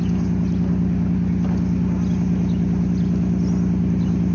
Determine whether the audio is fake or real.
real